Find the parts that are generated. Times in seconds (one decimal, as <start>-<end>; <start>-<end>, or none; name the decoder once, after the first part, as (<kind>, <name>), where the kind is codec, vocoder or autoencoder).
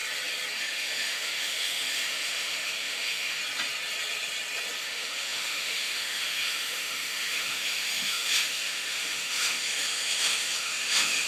0.6-3.4 (autoencoder, DAC-VAE); 4.8-11.3